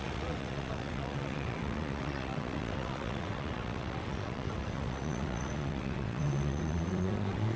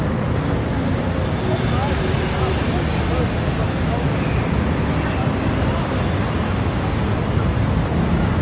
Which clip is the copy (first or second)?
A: first